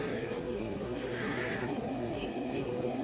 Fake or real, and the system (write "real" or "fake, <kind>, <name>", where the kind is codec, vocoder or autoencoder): fake, codec, SNAC